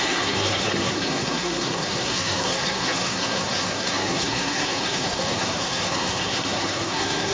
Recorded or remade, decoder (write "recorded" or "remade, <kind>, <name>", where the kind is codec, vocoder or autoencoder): remade, codec, SNAC